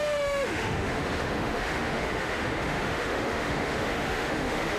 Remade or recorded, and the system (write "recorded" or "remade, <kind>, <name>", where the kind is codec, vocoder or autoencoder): remade, autoencoder, DAC-VAE